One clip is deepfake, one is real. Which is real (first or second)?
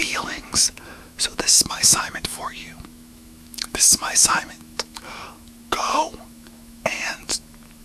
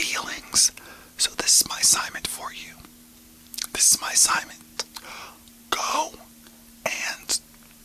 second